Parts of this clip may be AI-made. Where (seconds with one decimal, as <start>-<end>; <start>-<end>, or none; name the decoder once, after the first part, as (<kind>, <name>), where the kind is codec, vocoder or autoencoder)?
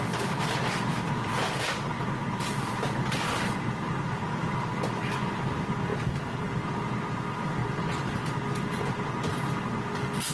5.9-6.5 (vocoder, BigVGAN v2)